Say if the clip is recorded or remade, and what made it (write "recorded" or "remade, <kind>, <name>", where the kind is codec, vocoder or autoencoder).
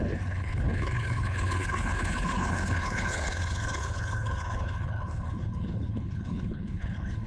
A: remade, codec, HILCodec